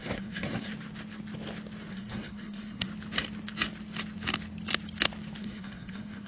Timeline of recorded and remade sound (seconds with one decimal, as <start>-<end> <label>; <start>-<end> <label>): 0.0-0.7 remade; 0.7-1.9 recorded; 1.9-2.9 remade; 2.9-5.4 recorded; 5.4-6.3 remade